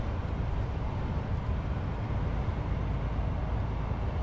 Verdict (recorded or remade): recorded